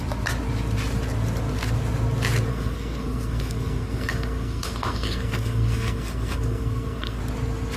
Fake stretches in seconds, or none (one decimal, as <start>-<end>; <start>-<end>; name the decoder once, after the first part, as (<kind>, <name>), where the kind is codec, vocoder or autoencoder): 2.5-7.2 (codec, SNAC)